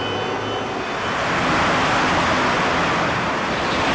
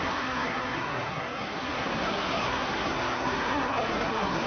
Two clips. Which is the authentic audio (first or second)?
first